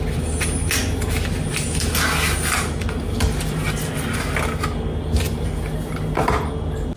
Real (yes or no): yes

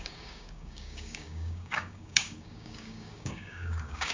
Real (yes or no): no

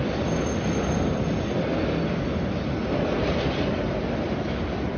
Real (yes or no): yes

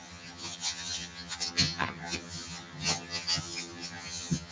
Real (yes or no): no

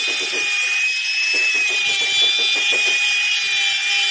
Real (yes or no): yes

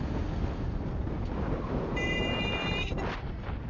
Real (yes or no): yes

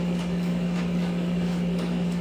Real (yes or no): no